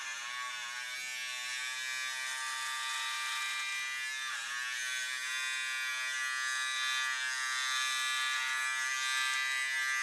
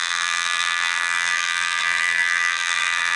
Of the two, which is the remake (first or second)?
second